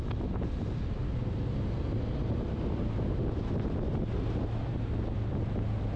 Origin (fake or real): real